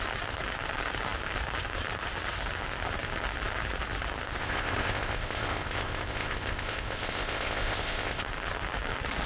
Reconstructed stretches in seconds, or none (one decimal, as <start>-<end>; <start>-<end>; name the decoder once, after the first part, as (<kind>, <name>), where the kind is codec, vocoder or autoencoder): 4.4-8.2 (codec, ZipCodec)